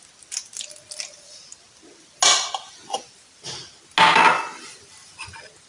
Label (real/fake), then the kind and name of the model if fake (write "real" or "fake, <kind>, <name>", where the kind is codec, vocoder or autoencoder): real